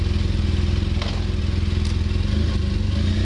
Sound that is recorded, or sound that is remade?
recorded